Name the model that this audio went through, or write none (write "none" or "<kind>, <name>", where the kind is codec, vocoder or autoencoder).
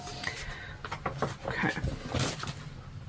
none